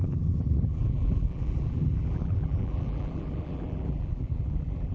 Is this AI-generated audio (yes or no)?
yes